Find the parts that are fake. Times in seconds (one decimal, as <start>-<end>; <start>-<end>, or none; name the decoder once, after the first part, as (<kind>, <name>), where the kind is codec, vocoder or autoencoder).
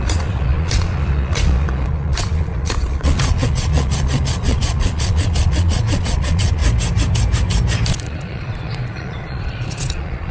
0.0-6.6 (vocoder, Vocos); 7.9-10.3